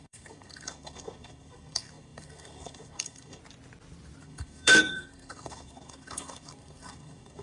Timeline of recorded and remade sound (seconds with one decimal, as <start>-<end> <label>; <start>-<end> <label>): 0.0-3.4 remade; 3.4-4.2 recorded; 4.2-7.4 remade